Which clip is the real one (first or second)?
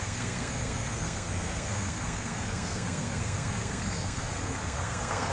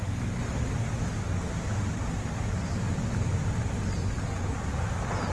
second